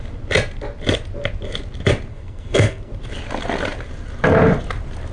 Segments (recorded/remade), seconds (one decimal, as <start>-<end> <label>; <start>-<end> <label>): 0.0-2.1 recorded; 2.1-2.9 remade; 2.9-5.1 recorded